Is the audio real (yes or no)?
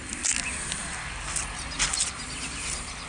yes